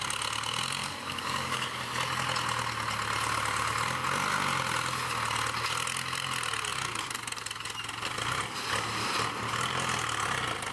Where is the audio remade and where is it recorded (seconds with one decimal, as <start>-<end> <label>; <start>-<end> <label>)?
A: 0.0-0.8 recorded; 0.8-1.8 remade; 1.8-10.7 recorded